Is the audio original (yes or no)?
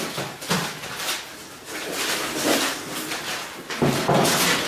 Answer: yes